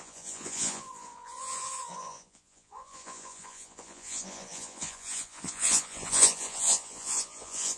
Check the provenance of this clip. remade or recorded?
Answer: remade